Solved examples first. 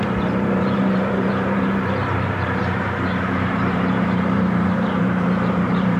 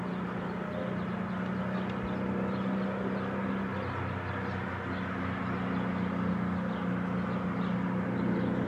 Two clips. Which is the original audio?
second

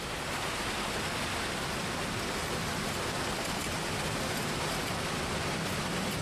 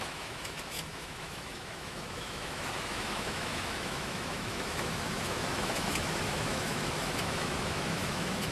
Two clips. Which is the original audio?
first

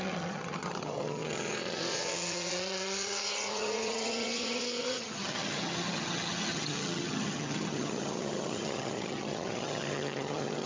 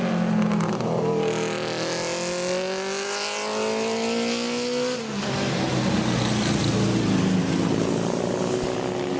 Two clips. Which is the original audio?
second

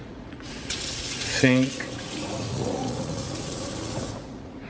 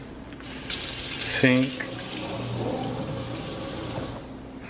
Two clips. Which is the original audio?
second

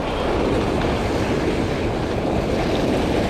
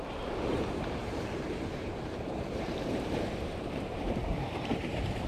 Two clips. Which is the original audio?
first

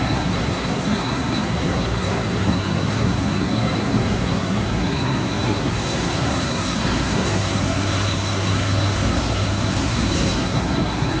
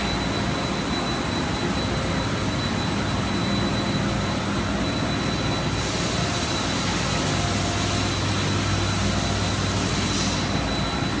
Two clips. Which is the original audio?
second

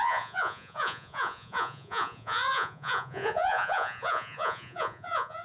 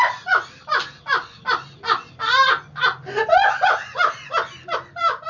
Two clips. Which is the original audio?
second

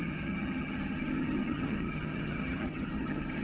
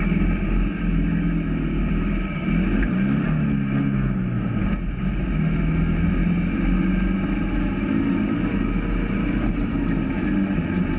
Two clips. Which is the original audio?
second